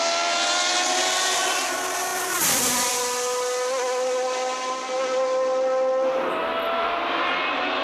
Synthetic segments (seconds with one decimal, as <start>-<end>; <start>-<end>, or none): none